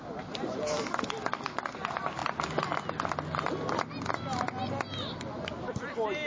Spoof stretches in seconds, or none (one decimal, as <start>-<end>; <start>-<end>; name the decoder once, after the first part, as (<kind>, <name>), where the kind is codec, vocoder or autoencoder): 0.0-2.2 (vocoder, BigVGAN v2); 5.7-6.3

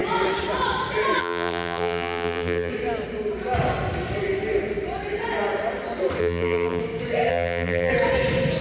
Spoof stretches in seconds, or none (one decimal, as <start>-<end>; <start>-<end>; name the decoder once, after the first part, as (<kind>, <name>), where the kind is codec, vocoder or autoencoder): 1.2-2.7 (vocoder, BigVGAN v2); 6.2-6.8; 7.3-7.9

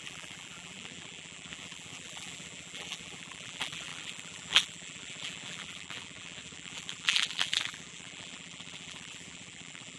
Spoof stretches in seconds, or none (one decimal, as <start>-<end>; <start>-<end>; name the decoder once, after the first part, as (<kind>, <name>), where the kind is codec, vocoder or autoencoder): 0.0-10.0 (vocoder, BigVGAN v2)

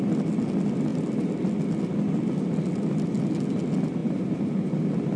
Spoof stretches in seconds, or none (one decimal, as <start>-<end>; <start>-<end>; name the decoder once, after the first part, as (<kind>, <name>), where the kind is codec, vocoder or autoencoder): none

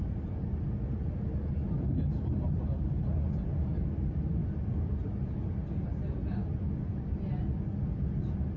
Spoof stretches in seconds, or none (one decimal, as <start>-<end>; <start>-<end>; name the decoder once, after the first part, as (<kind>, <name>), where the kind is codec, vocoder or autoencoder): none

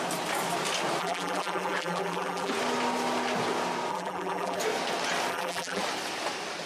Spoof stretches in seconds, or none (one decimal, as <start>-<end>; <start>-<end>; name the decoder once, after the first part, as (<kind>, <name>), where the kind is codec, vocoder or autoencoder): 1.0-2.5 (vocoder, BigVGAN v2); 3.9-4.6; 5.3-5.8

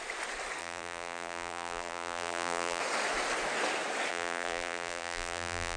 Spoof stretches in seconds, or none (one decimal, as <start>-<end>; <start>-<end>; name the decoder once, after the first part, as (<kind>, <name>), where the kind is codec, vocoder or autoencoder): 0.6-2.8 (vocoder, BigVGAN v2); 4.1-5.8